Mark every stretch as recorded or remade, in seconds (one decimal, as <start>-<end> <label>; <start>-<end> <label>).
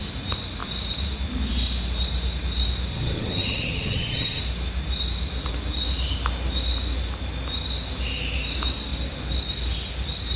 0.0-2.9 recorded; 2.9-4.4 remade; 4.4-10.4 recorded